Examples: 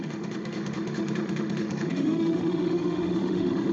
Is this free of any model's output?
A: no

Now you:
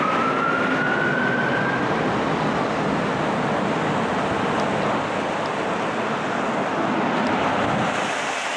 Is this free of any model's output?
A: yes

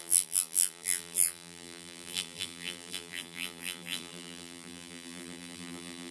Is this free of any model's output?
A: no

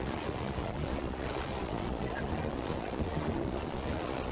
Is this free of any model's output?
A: no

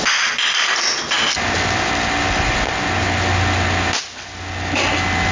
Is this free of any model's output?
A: yes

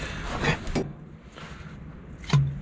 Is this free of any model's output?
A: yes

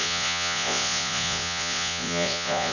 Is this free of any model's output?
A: no